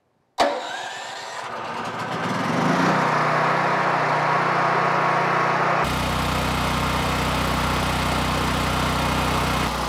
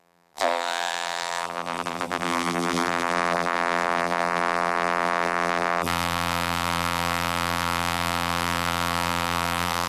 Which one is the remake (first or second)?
second